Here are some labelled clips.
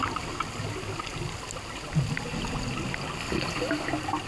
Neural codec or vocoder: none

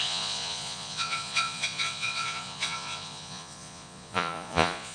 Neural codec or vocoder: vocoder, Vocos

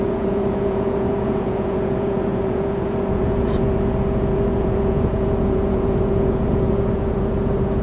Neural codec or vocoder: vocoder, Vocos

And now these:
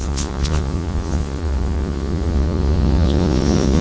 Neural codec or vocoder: vocoder, Vocos